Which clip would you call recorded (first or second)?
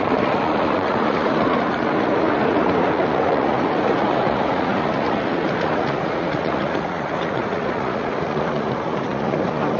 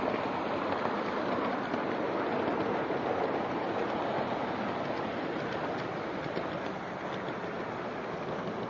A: second